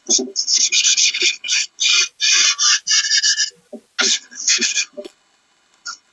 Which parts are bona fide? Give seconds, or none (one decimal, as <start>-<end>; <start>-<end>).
1.9-4.0